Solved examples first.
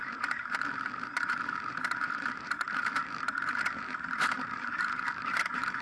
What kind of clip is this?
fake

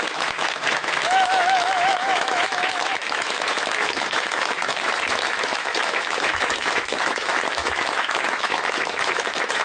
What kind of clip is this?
fake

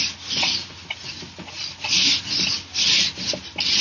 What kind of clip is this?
real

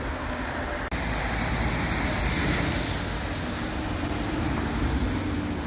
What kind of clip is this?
real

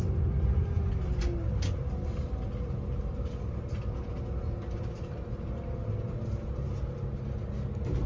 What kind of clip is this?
real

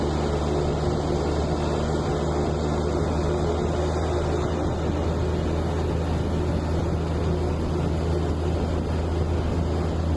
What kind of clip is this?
real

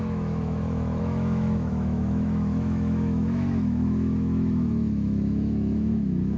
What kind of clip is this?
fake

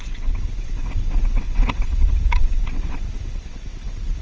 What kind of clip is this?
fake